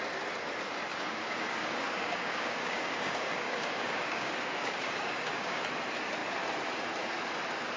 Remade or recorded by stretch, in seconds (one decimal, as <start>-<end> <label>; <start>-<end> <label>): 0.0-0.9 recorded; 0.9-5.6 remade; 5.6-7.8 recorded